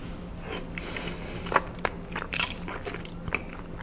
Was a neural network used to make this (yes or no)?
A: no